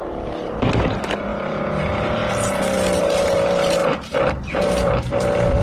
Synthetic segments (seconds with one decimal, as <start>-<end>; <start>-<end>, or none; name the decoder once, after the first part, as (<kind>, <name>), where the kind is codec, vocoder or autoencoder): 0.0-2.2 (vocoder, BigVGAN v2); 3.0-5.6